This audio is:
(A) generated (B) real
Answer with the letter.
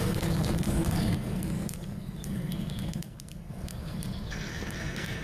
A